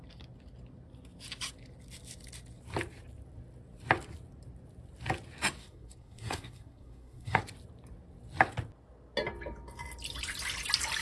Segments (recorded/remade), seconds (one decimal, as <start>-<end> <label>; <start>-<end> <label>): 0.0-5.6 recorded; 5.6-7.4 remade; 7.4-11.0 recorded